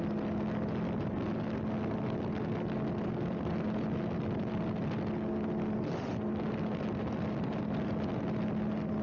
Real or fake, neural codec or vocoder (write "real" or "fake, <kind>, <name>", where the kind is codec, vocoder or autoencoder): real